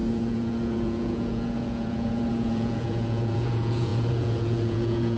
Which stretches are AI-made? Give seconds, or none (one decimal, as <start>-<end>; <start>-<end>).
0.0-5.2